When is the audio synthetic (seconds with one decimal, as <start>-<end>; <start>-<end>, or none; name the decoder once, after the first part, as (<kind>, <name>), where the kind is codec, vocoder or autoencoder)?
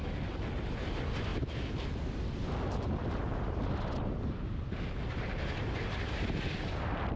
none